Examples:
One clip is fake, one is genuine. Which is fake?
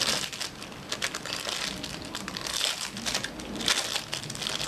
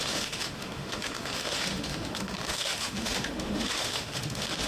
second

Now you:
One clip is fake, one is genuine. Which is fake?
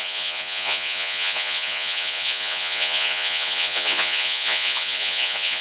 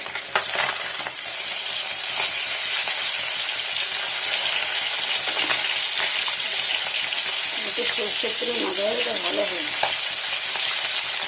first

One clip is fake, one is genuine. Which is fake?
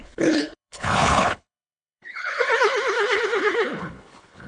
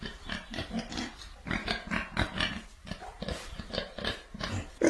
first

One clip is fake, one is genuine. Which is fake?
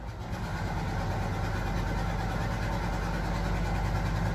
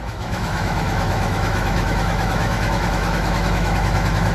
second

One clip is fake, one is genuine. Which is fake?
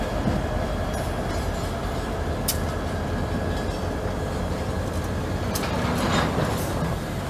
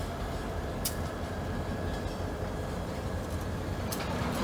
second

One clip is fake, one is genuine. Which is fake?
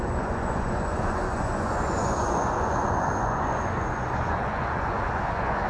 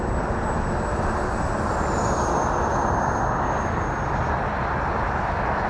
first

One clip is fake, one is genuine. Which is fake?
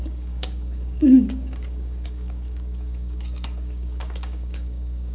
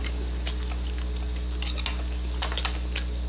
first